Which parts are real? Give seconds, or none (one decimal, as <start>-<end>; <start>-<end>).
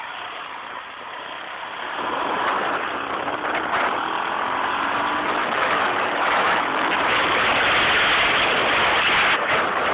0.0-5.4; 7.4-9.9